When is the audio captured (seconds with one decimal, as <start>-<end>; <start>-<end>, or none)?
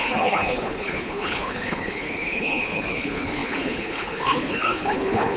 none